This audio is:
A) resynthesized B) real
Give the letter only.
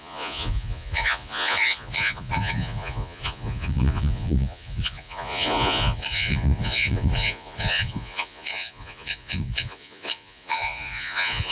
A